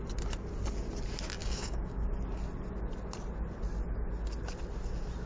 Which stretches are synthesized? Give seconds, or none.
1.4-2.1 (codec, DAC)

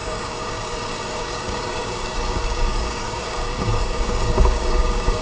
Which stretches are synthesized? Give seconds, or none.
0.0-5.2 (codec, DAC)

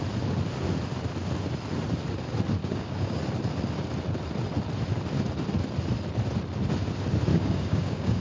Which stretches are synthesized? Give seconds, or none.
2.6-3.2 (codec, DAC); 7.3-8.2

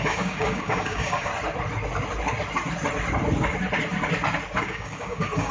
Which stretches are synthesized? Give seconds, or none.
0.0-1.3 (codec, DAC); 4.6-5.5

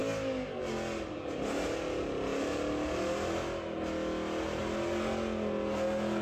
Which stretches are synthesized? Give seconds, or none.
0.0-0.6 (codec, DAC)

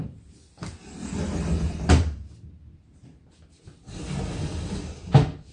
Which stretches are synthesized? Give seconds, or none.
none

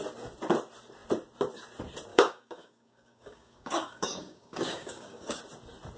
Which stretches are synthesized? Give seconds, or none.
2.1-5.4 (codec, DAC)

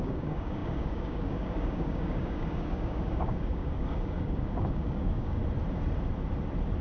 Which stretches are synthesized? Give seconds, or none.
0.0-5.4 (codec, DAC)